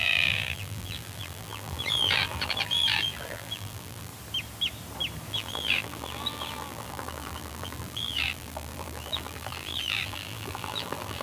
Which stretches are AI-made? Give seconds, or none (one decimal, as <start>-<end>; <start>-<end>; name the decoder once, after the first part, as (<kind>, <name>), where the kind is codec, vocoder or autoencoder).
0.0-4.1 (vocoder, BigVGAN v2); 5.3-11.2